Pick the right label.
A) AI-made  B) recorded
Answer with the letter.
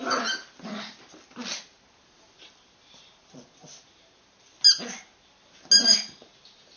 B